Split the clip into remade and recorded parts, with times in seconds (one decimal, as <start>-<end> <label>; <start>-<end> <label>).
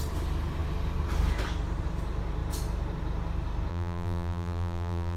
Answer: 0.0-3.7 recorded; 3.7-5.2 remade